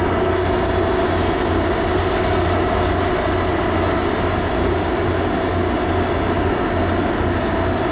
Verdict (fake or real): real